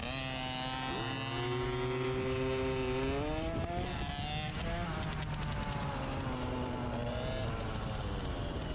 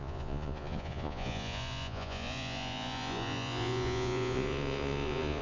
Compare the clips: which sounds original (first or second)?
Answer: first